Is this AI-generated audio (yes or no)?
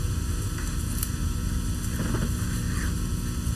no